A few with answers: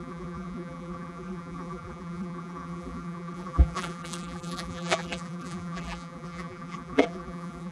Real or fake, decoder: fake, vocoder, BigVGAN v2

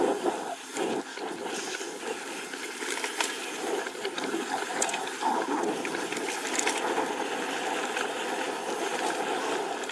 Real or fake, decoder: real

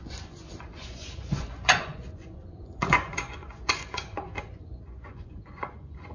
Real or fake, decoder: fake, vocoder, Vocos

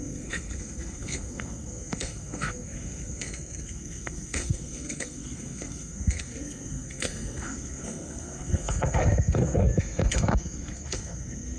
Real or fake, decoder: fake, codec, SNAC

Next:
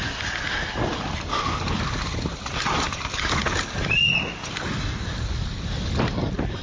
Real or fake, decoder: real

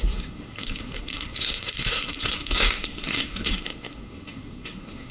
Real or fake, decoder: fake, codec, SNAC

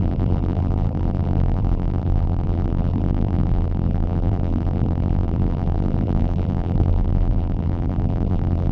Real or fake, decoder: fake, vocoder, BigVGAN v2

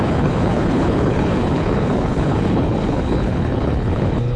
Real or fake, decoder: fake, codec, HILCodec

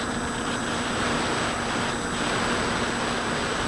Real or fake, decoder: real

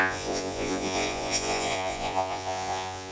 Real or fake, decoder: fake, vocoder, Vocos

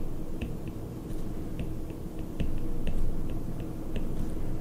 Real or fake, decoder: real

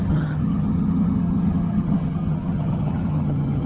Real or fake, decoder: fake, vocoder, HiFi-GAN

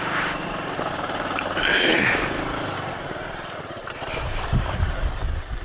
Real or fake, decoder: fake, vocoder, BigVGAN v2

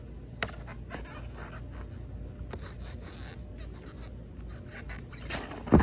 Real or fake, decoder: real